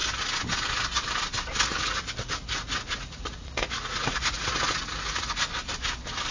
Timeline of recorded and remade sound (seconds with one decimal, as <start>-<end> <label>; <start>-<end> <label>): 0.0-1.7 recorded; 1.7-5.5 remade; 5.5-6.3 recorded